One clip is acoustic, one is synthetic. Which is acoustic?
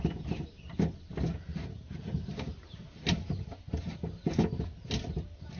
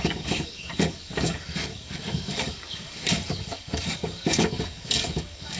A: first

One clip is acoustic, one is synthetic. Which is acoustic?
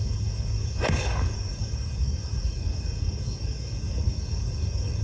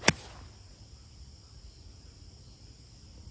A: second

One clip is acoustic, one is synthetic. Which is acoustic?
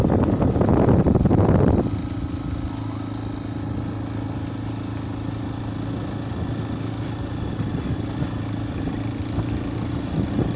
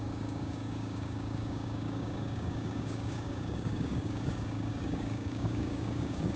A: first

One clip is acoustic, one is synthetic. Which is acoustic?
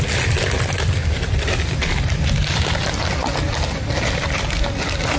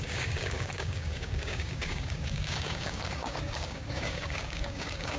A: first